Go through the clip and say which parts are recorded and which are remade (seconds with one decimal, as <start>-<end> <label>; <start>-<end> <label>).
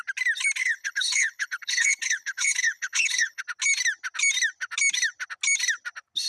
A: 0.0-0.6 recorded; 0.6-3.4 remade; 3.4-6.3 recorded